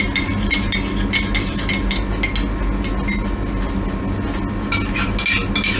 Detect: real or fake real